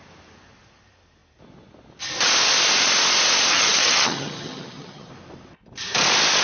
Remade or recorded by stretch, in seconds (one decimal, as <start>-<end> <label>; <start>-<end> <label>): 0.0-3.5 recorded; 3.5-5.1 remade; 5.1-6.4 recorded